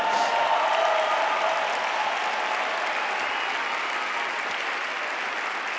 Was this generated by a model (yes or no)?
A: no